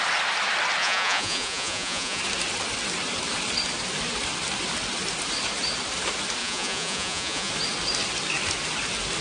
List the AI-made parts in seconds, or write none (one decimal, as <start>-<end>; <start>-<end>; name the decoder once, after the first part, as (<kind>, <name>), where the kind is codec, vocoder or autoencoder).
0.8-2.2 (vocoder, Vocos); 6.4-7.5